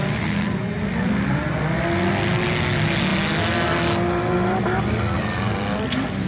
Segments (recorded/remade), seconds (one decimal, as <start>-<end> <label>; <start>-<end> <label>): 0.0-6.3 recorded